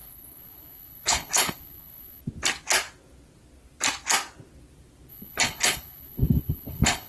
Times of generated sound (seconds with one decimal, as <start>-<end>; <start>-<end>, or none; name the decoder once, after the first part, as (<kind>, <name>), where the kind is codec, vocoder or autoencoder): 0.0-2.2 (codec, HILCodec); 5.1-7.1